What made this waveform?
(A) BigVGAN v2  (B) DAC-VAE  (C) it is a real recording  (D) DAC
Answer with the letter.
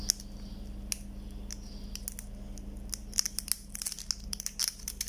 C